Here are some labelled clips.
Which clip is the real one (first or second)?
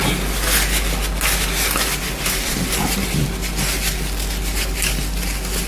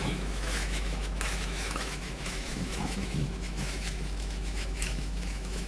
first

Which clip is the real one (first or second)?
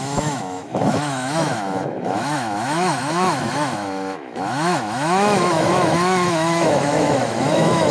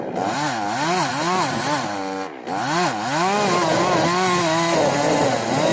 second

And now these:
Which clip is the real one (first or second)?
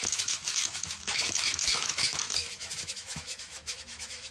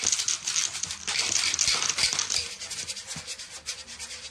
second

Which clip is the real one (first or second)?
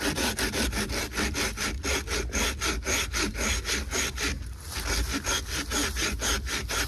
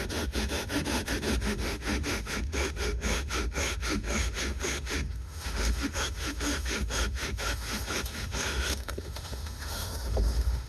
first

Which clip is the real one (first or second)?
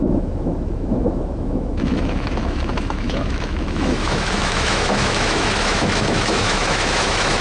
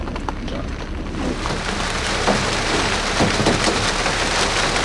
second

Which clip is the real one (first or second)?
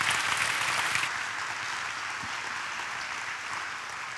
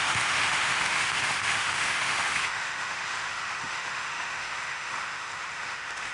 first